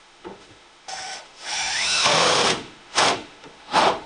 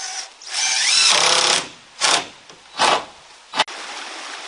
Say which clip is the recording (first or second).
second